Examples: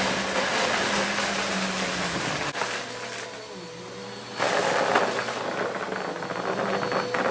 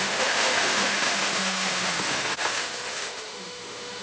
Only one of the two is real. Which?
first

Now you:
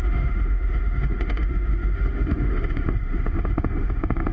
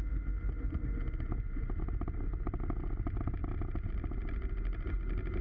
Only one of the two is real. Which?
second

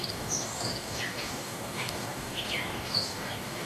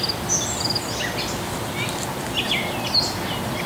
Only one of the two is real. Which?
second